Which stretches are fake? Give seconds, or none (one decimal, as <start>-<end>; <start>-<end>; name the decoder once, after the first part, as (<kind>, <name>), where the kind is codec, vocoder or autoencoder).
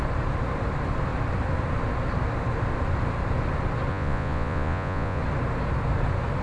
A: 3.9-5.2 (vocoder, Vocos)